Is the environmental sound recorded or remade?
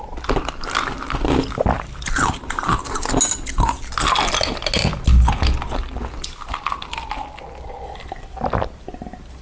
recorded